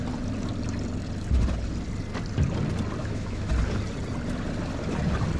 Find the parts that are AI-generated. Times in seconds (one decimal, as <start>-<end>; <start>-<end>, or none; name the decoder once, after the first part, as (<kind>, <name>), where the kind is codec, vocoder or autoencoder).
3.0-3.5 (autoencoder, DAC-VAE)